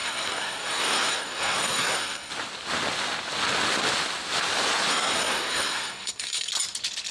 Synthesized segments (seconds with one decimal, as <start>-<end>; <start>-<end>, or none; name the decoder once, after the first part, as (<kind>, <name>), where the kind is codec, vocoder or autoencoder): 0.0-2.3 (codec, SNAC); 4.9-6.5